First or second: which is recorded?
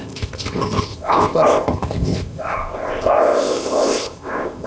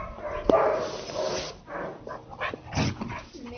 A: second